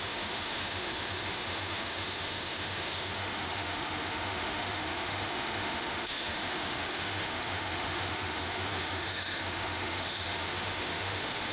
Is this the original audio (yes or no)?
no